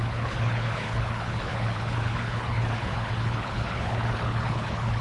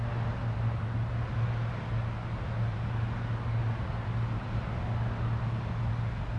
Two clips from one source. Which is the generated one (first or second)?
first